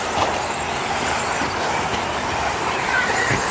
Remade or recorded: recorded